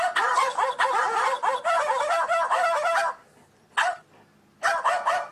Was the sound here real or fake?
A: real